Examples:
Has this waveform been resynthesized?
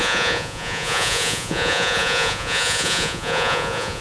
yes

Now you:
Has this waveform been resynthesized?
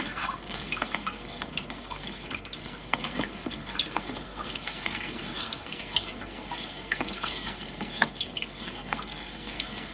yes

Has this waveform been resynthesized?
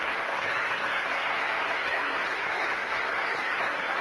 yes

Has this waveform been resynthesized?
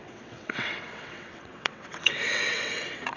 yes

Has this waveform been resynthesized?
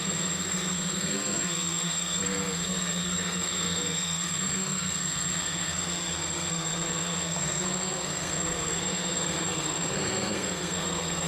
yes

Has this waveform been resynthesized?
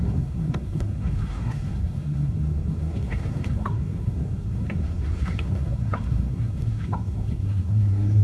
yes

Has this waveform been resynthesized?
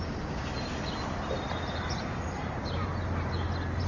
no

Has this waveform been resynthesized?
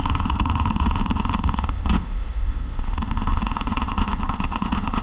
yes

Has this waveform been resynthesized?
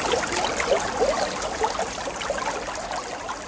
no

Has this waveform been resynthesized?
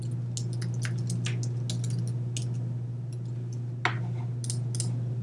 no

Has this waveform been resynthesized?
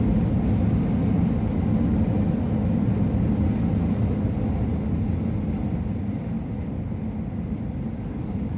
no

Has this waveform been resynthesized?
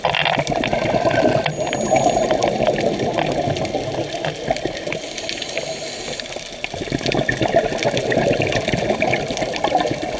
no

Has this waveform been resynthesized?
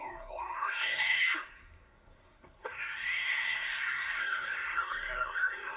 yes